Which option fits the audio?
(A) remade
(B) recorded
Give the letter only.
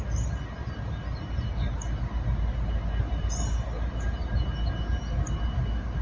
B